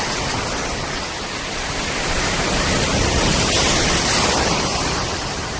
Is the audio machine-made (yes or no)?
no